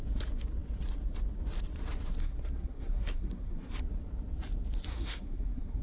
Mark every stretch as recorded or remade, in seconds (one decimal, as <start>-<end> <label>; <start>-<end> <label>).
0.0-2.2 recorded; 2.2-3.7 remade; 3.7-4.9 recorded; 4.9-5.8 remade